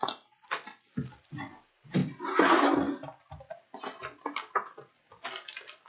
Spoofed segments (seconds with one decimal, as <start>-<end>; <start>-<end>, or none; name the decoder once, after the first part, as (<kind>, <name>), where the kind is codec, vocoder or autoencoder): none